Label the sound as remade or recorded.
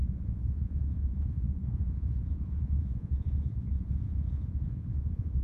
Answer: remade